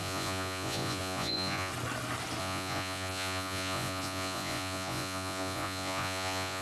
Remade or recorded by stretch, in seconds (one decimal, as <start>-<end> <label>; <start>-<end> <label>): 0.0-1.7 remade; 1.7-2.4 recorded; 2.4-6.6 remade